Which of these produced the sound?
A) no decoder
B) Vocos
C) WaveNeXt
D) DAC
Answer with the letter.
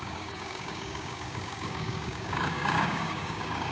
D